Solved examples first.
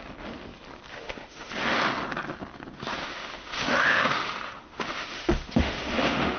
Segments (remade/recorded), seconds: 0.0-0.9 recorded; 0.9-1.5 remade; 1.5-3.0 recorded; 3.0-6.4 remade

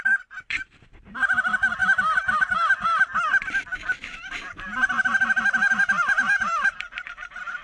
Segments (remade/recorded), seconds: 0.0-3.1 remade; 3.1-5.7 recorded; 5.7-7.6 remade

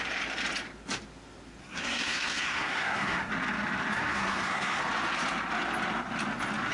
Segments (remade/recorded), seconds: 0.0-1.6 recorded; 1.6-3.3 remade; 3.3-3.9 recorded; 3.9-4.8 remade; 4.8-6.7 recorded